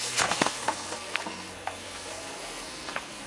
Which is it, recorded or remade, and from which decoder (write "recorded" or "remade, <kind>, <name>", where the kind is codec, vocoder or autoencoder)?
remade, codec, SNAC